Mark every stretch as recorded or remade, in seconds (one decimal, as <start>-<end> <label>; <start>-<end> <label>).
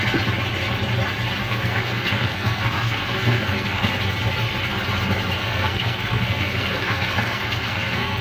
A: 0.0-1.4 recorded; 1.4-3.9 remade; 3.9-5.4 recorded; 5.4-8.2 remade